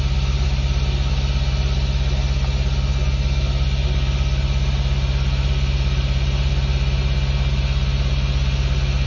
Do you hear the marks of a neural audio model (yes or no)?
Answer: no